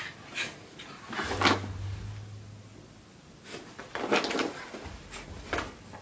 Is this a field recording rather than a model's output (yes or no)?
yes